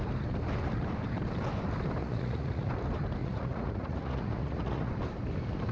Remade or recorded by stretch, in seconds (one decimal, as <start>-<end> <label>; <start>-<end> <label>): 0.0-2.0 recorded; 2.0-2.7 remade; 2.7-3.2 recorded; 3.2-4.9 remade; 4.9-5.7 recorded